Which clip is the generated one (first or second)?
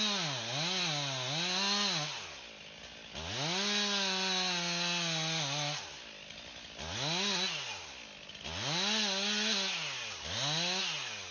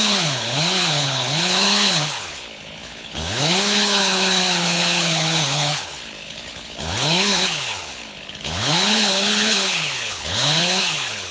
second